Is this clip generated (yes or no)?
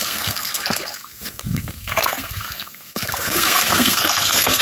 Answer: yes